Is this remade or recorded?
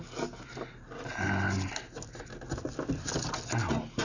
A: recorded